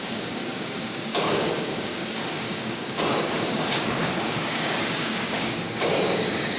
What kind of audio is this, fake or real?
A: fake